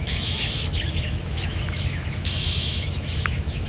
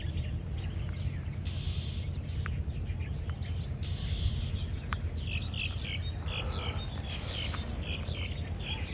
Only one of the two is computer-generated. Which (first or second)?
first